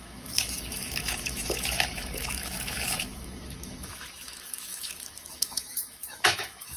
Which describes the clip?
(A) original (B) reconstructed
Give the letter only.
B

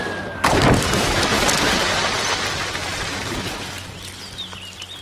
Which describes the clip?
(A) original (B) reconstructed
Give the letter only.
A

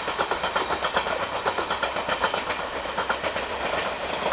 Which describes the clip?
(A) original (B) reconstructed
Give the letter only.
A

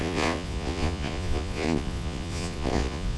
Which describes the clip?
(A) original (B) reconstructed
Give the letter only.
B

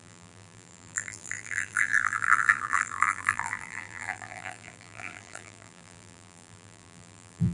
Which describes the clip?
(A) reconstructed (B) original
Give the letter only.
A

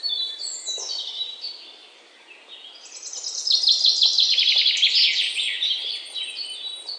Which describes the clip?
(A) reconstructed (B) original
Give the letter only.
B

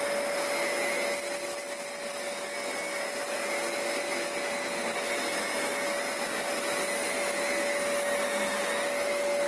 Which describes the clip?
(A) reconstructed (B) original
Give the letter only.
B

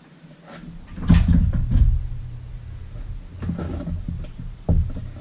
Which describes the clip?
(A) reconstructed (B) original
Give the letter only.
B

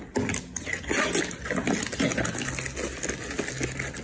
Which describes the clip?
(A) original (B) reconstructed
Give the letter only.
A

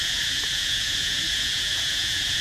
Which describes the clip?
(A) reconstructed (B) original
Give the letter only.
A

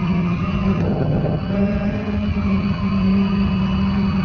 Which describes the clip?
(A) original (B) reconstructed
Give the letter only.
B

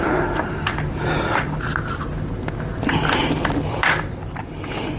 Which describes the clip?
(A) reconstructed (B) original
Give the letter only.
B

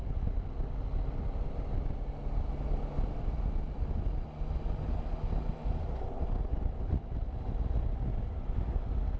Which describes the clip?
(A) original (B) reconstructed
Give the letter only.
A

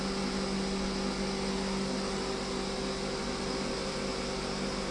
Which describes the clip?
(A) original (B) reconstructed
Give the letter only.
A